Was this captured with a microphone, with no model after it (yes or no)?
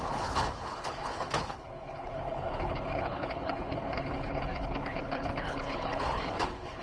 no